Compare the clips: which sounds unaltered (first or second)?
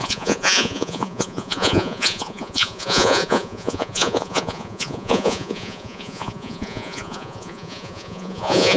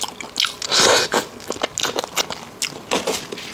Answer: second